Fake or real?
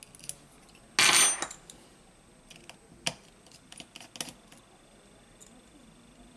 real